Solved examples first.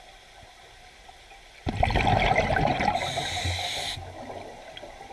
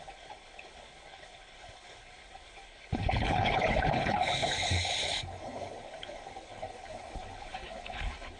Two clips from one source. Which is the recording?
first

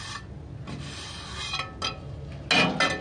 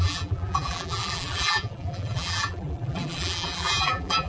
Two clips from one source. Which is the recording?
first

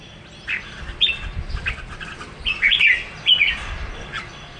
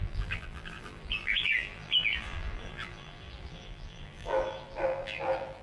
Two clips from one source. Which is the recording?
first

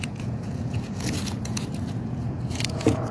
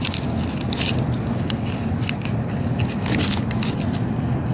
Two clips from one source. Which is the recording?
second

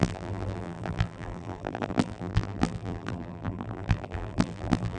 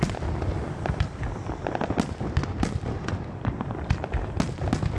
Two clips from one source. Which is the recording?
second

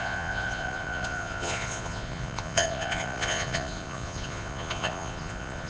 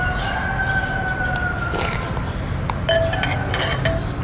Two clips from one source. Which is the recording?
second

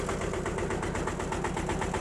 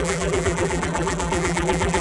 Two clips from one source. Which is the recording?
first